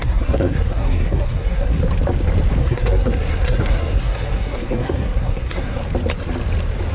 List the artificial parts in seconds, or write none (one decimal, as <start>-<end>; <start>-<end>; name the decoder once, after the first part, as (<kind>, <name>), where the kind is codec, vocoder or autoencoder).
0.0-1.8 (codec, SNAC); 2.6-5.8